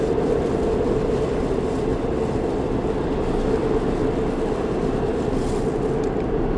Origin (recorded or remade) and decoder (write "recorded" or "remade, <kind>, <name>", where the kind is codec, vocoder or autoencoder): recorded